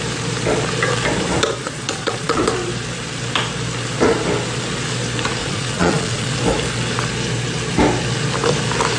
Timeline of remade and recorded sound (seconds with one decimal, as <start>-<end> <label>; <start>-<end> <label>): 0.0-1.6 recorded; 1.6-2.4 remade; 2.4-5.4 recorded; 5.4-6.3 remade; 6.3-9.0 recorded